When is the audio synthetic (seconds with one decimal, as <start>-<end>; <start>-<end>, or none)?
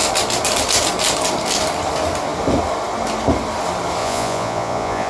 4.0-5.1